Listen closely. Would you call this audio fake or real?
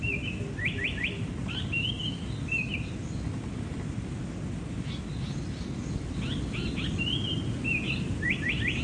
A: real